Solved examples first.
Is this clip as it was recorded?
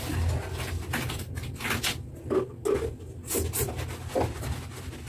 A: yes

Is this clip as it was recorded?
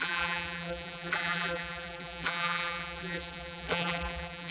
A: no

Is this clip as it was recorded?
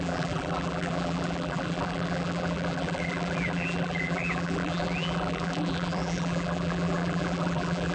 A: no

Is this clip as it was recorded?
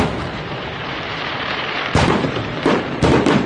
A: no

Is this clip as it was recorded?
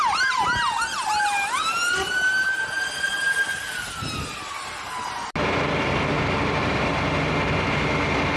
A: yes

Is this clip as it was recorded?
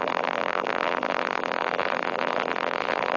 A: no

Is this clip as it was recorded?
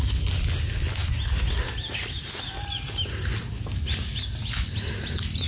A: yes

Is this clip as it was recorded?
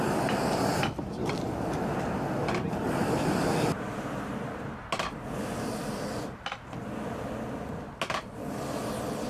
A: yes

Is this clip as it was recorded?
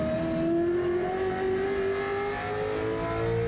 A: yes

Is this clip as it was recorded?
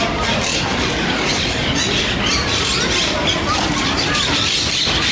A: no